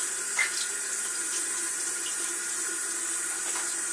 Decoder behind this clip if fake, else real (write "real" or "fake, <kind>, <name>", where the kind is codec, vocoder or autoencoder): real